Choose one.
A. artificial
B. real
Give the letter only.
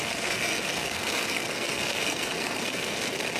A